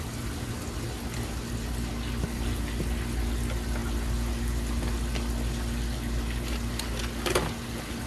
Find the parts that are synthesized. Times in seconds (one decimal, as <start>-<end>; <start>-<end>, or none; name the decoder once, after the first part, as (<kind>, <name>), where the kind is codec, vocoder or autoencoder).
none